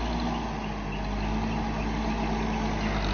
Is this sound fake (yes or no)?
no